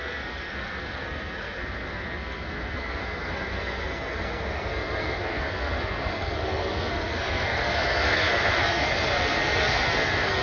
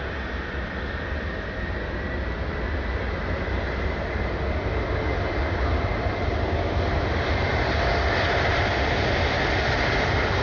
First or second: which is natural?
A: second